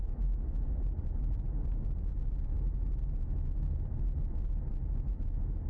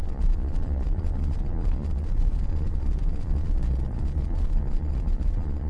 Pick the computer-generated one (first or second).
second